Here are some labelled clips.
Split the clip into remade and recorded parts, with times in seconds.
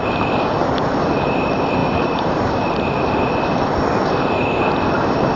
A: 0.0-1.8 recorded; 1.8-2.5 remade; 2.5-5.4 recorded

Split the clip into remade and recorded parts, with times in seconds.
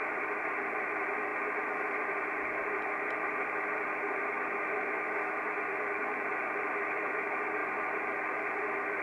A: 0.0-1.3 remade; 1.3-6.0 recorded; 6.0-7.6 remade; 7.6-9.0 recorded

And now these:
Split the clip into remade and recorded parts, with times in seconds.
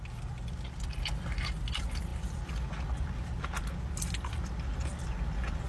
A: 0.0-5.7 recorded